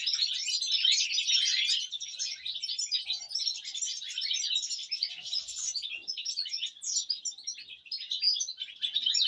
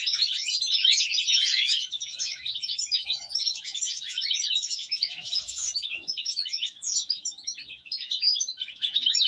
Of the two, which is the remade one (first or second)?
second